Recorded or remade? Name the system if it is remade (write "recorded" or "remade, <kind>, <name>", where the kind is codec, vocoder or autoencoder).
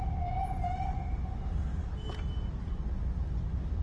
recorded